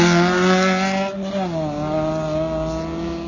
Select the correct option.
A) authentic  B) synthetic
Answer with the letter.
A